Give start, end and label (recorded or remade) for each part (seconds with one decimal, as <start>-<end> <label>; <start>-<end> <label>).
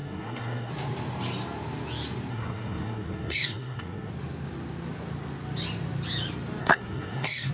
0.0-0.7 remade; 0.7-2.3 recorded; 2.3-4.1 remade; 4.1-6.6 recorded; 6.6-7.5 remade